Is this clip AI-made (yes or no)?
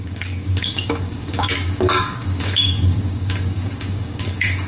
yes